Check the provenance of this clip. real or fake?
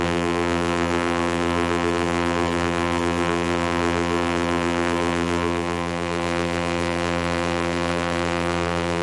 fake